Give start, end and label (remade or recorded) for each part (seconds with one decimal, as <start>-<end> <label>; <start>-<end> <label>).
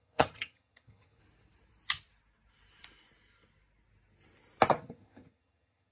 0.0-1.2 remade; 1.2-4.7 recorded; 4.7-5.9 remade